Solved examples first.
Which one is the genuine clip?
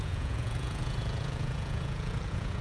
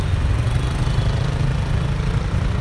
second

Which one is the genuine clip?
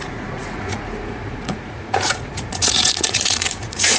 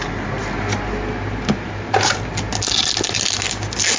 second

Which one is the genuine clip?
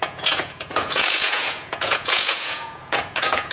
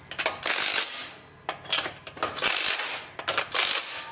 second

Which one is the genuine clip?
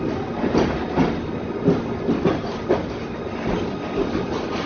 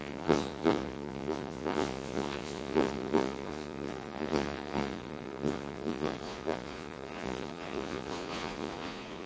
first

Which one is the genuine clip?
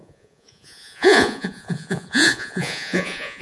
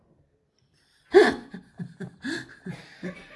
second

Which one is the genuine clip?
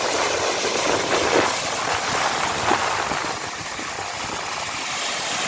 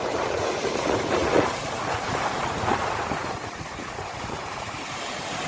first